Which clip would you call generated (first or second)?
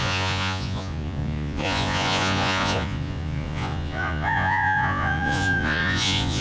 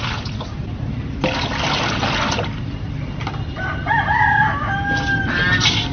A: first